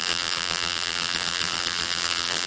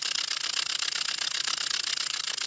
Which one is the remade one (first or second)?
first